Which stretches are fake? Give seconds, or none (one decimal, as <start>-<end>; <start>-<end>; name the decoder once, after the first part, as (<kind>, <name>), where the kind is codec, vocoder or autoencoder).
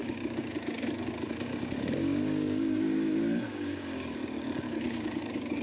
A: 0.0-5.6 (codec, DAC)